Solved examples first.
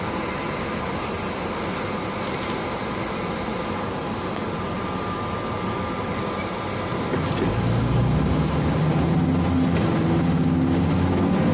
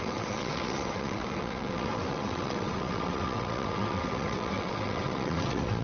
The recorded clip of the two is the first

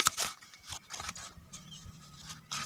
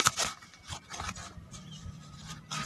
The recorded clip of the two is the second